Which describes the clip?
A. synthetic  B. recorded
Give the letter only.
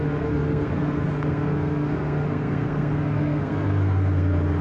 A